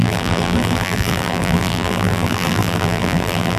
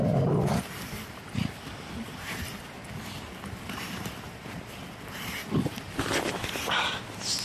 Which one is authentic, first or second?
second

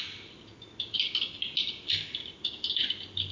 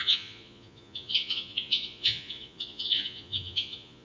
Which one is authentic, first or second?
first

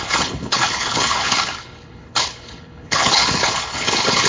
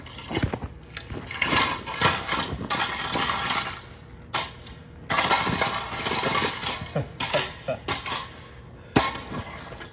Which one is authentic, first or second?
second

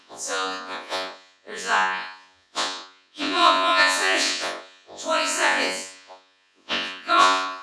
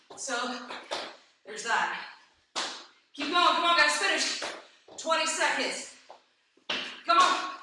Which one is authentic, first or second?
second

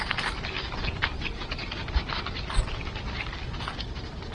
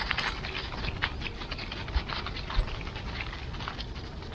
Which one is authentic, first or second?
second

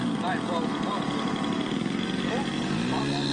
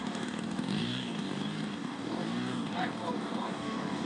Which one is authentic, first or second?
first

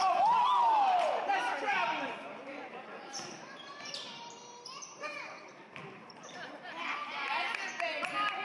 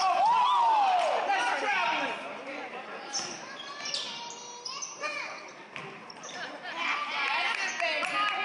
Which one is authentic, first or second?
second